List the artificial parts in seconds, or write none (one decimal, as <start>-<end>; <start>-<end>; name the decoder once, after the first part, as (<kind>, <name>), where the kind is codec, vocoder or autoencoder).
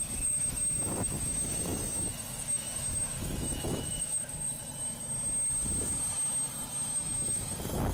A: 0.0-4.4 (autoencoder, DAC-VAE); 6.9-7.9